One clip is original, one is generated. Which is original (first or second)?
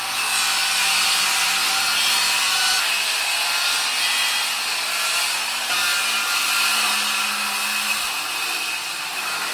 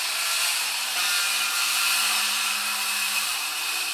first